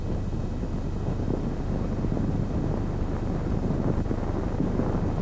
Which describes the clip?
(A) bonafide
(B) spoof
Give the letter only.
A